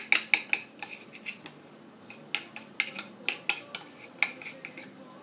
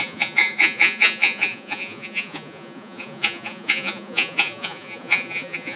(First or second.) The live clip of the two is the first